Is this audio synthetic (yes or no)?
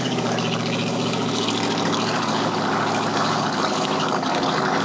yes